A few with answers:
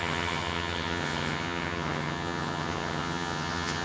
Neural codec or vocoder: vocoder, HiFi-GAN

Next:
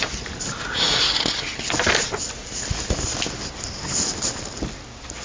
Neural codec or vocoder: none